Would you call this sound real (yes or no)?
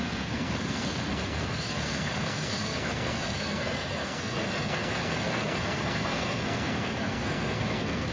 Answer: no